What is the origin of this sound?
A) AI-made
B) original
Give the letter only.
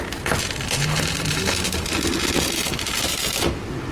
B